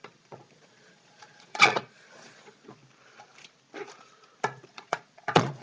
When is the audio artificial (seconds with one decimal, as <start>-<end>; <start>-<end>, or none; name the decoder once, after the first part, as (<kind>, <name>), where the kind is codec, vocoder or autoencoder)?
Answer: 0.0-2.8 (vocoder, Vocos); 4.7-5.6